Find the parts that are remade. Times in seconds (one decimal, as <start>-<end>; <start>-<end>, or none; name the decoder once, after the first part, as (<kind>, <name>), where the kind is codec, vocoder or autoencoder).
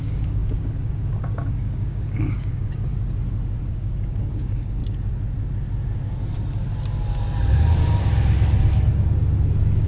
0.0-2.9 (codec, DAC); 3.7-4.8